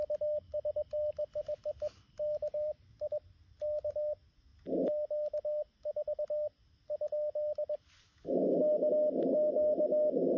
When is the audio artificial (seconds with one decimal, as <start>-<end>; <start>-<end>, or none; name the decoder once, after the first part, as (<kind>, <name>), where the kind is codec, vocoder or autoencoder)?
2.5-3.1 (vocoder, BigVGAN v2)